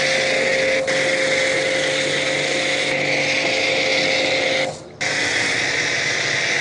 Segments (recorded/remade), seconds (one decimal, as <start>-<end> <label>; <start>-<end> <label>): 0.0-6.6 recorded